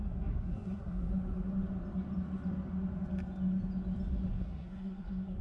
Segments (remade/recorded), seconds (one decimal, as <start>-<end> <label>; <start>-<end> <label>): 0.0-1.1 remade; 1.1-4.3 recorded; 4.3-5.4 remade

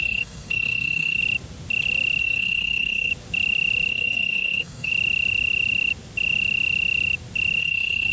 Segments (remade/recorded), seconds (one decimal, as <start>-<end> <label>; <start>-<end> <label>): 0.0-1.2 remade; 1.2-2.2 recorded; 2.2-3.1 remade; 3.1-3.9 recorded; 3.9-4.9 remade; 4.9-7.6 recorded; 7.6-8.1 remade

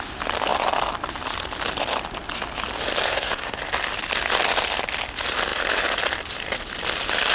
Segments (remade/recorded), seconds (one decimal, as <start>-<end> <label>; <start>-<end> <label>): 0.0-3.1 recorded; 3.1-3.6 remade; 3.6-7.3 recorded

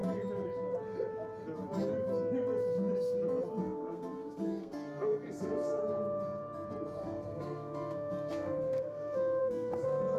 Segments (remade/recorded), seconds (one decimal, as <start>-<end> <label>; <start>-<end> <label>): 0.0-3.6 recorded; 3.6-5.8 remade; 5.8-7.0 recorded; 7.0-10.2 remade

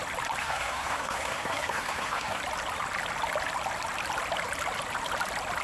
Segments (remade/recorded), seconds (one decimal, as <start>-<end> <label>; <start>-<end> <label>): 0.0-0.4 recorded; 0.4-2.4 remade; 2.4-5.6 recorded

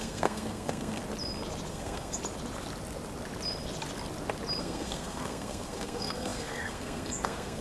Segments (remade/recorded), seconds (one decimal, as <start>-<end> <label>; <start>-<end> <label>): 0.0-1.0 remade; 1.0-1.7 recorded; 1.7-2.2 remade; 2.2-4.6 recorded; 4.6-7.6 remade